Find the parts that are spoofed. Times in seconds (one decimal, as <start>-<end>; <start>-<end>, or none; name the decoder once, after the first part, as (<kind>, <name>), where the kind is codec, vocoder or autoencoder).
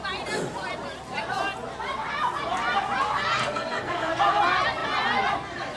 3.4-4.2 (codec, SNAC)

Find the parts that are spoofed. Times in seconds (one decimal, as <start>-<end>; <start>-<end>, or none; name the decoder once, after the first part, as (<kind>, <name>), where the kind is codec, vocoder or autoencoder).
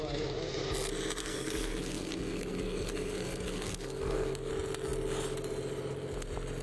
1.2-4.5 (codec, SNAC)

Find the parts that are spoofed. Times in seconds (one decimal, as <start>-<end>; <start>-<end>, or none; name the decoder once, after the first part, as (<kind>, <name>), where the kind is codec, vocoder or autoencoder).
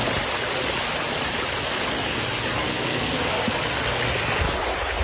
2.6-3.4 (codec, SNAC)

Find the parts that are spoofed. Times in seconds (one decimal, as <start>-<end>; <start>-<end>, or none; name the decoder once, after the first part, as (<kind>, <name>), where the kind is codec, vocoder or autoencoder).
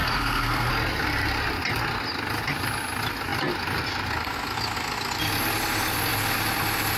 0.0-0.7 (codec, SNAC)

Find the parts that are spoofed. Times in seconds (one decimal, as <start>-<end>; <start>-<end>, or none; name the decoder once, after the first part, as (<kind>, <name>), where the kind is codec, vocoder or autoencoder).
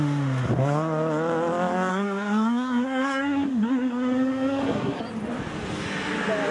1.9-5.0 (codec, SNAC)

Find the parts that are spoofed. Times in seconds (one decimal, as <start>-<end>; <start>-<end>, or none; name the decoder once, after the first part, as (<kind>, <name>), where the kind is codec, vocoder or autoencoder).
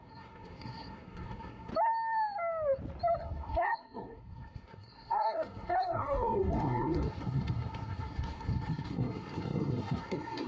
0.0-1.7 (codec, SNAC); 3.2-10.5